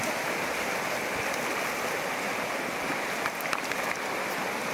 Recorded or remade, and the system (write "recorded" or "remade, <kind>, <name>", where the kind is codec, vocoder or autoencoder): recorded